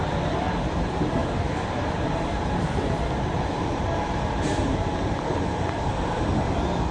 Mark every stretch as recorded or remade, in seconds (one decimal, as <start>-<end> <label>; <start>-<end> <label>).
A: 0.0-6.9 recorded